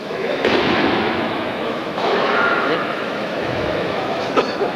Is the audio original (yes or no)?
no